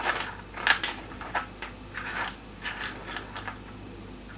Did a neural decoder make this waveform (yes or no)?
no